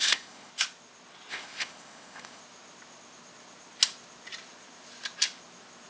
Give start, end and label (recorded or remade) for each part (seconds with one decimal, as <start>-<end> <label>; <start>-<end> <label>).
0.0-0.5 remade; 0.5-1.3 recorded; 1.3-2.4 remade; 2.4-5.9 recorded